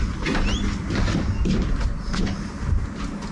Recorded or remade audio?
recorded